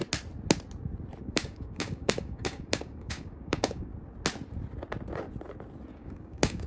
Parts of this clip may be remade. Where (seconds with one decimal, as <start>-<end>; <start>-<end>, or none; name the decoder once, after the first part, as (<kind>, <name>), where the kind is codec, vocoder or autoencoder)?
1.2-3.9 (codec, DAC); 5.9-6.7

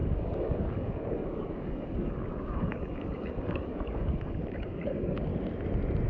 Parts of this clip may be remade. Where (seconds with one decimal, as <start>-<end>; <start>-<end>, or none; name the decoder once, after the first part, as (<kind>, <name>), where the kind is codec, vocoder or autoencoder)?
0.0-5.3 (codec, DAC)

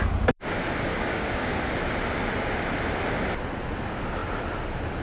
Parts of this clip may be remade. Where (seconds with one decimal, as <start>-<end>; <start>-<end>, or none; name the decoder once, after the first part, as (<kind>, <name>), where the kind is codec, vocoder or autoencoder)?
0.9-1.6 (codec, DAC)

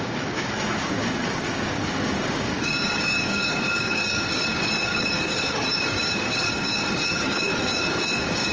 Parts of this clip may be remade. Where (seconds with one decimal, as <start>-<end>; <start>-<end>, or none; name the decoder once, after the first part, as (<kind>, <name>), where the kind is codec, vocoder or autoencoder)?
0.0-8.5 (codec, DAC)

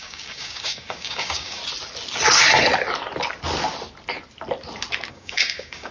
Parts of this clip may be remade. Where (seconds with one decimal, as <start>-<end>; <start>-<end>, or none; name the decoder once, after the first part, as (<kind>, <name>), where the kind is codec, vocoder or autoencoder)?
0.0-1.6 (codec, DAC); 5.1-5.9

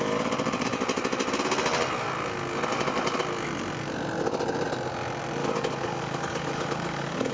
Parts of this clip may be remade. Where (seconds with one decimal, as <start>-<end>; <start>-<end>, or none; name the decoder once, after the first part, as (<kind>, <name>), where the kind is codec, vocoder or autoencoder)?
5.4-7.3 (codec, DAC)

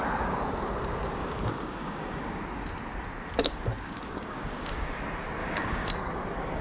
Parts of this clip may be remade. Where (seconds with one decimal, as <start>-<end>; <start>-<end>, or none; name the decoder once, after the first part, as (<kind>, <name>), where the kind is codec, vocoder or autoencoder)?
1.2-2.4 (codec, DAC); 3.4-5.0; 5.4-5.9